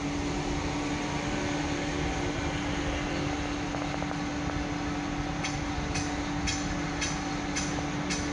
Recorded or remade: recorded